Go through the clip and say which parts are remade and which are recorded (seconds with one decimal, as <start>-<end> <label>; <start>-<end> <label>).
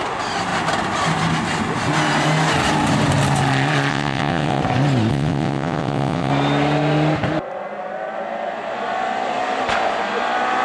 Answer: 0.0-3.9 recorded; 3.9-4.6 remade; 4.6-5.1 recorded; 5.1-6.3 remade; 6.3-10.6 recorded